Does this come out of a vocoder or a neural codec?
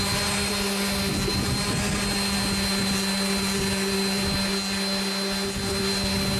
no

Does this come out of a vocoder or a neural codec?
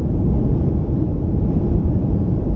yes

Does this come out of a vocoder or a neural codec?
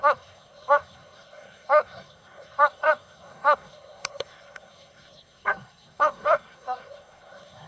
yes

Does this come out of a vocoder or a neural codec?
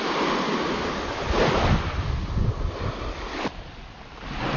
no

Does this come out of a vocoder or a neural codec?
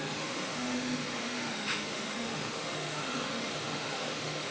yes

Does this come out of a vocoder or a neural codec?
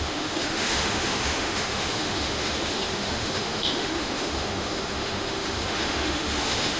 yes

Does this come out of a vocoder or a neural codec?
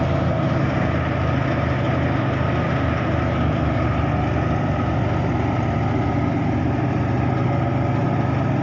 no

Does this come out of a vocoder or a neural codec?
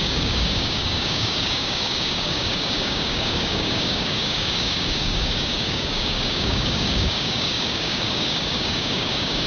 yes